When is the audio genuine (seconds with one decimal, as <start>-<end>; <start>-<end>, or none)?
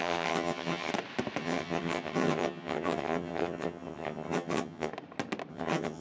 0.9-1.4; 4.9-5.5